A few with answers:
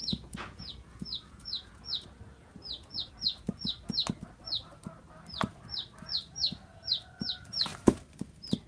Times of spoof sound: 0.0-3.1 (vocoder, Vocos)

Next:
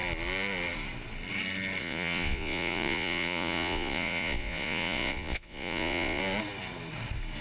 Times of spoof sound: 1.8-6.2 (vocoder, Vocos)

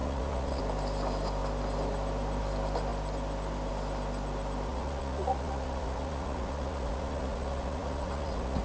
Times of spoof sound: 0.0-0.6 (vocoder, Vocos); 4.7-8.6

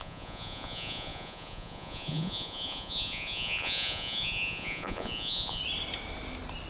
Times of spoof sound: 0.0-5.6 (vocoder, Vocos)